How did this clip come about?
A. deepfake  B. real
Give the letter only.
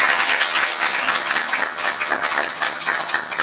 A